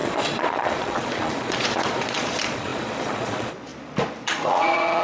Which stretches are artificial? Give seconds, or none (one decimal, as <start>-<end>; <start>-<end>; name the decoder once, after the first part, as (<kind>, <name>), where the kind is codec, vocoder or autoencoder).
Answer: 0.0-3.7 (vocoder, Vocos); 4.2-5.0